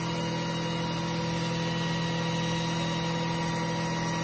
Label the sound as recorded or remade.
recorded